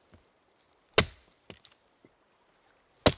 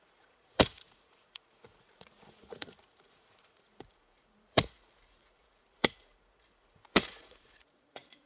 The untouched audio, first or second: first